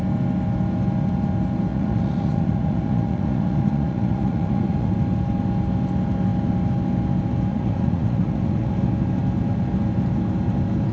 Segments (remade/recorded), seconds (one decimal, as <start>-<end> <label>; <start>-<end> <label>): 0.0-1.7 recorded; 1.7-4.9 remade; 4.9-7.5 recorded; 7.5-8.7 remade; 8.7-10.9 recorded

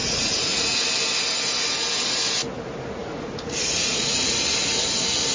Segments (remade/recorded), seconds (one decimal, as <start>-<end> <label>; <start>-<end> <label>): 0.0-0.6 remade; 0.6-3.0 recorded; 3.0-4.4 remade; 4.4-5.3 recorded

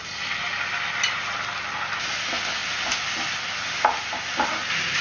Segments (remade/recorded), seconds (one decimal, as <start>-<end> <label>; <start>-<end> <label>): 0.0-5.0 recorded